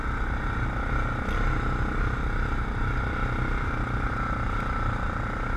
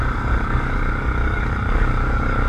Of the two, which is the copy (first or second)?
second